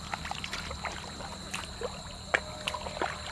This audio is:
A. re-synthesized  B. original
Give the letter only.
B